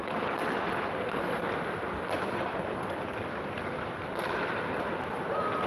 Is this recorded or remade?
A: recorded